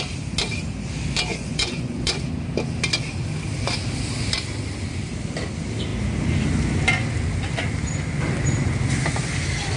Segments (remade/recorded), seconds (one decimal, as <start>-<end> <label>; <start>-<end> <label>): 0.0-1.3 recorded; 1.3-2.1 remade; 2.1-9.8 recorded